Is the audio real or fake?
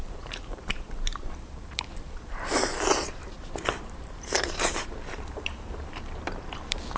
fake